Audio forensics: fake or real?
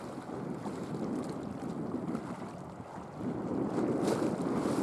real